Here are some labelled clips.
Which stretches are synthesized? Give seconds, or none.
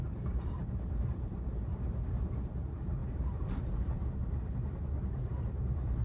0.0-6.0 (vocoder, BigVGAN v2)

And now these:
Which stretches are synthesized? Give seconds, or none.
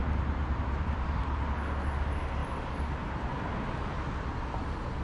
0.0-1.2 (vocoder, BigVGAN v2)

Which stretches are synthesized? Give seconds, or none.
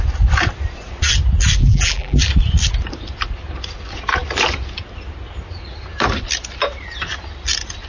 1.6-2.2 (vocoder, BigVGAN v2)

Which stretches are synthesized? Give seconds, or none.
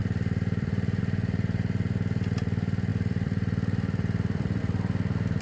0.0-1.0 (vocoder, BigVGAN v2); 2.9-4.6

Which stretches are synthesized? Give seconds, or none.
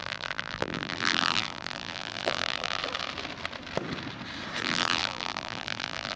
0.0-2.8 (vocoder, BigVGAN v2); 4.6-6.2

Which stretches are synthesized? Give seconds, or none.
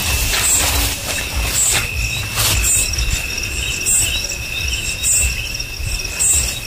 none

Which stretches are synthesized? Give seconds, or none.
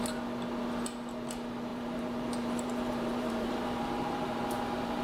1.7-5.0 (vocoder, BigVGAN v2)